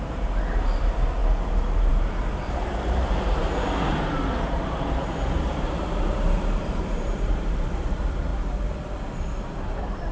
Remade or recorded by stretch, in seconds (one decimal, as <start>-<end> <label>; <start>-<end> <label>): 0.0-8.3 remade; 8.3-9.4 recorded; 9.4-10.1 remade